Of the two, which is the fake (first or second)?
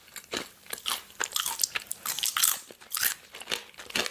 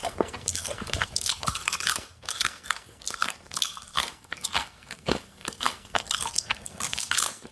second